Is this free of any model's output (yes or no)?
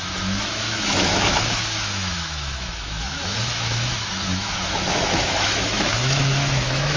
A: no